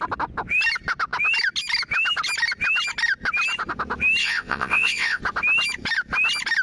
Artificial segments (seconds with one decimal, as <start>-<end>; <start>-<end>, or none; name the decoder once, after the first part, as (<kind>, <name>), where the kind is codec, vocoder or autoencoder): 4.2-5.2 (vocoder, WaveNeXt)